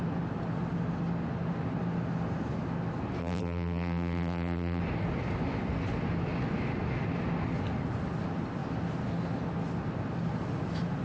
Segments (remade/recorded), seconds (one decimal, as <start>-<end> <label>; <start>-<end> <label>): 0.0-3.2 recorded; 3.2-4.8 remade; 4.8-11.0 recorded